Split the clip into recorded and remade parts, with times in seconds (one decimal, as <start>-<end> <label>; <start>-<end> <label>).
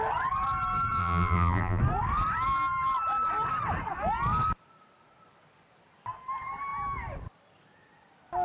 0.0-1.0 recorded; 1.0-1.8 remade; 1.8-8.4 recorded